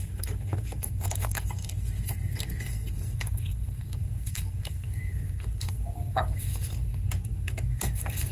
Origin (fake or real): fake